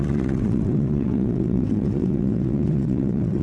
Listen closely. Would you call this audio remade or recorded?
remade